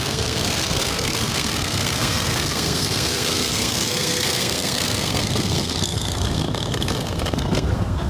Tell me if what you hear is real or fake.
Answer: fake